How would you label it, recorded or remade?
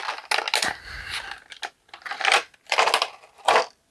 recorded